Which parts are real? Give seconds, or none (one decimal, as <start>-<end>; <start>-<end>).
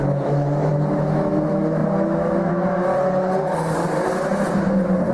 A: 2.9-5.1